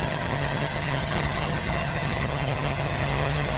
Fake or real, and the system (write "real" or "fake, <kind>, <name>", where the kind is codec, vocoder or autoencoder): fake, vocoder, HiFi-GAN